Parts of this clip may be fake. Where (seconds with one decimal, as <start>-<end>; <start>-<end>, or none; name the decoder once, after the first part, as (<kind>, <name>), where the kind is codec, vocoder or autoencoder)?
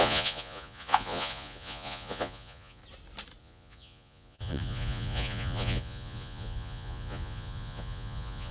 0.0-2.8 (vocoder, Vocos); 3.4-8.5